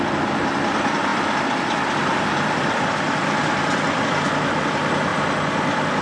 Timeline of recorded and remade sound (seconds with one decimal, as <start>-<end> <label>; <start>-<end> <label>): 0.0-1.1 recorded; 1.1-4.0 remade; 4.0-6.0 recorded